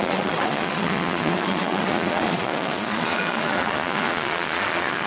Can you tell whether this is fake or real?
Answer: fake